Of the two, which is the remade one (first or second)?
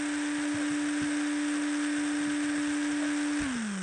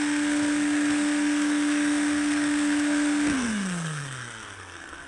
second